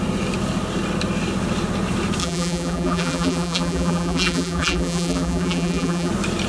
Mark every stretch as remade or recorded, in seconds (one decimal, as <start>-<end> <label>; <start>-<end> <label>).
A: 0.0-2.2 recorded; 2.2-6.1 remade; 6.1-6.5 recorded